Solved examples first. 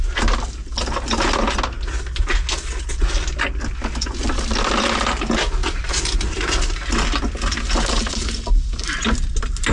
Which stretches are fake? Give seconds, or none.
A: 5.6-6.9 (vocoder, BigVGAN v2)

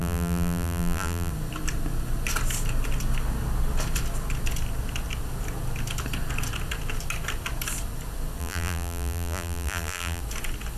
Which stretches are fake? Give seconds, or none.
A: 0.0-1.3 (vocoder, BigVGAN v2); 8.4-10.2